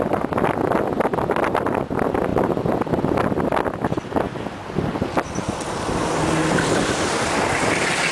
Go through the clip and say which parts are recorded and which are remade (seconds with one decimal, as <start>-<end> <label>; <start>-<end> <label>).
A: 0.0-8.1 recorded